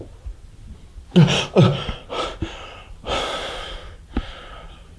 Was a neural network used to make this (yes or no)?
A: no